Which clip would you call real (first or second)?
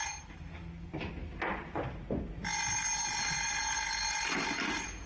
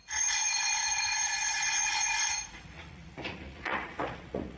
first